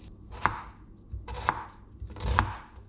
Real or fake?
real